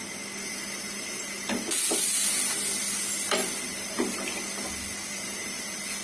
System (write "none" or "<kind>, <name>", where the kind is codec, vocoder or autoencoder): none